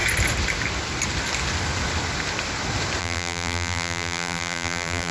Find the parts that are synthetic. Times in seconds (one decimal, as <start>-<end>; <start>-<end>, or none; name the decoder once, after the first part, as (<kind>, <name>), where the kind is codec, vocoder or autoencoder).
3.0-5.1 (vocoder, BigVGAN v2)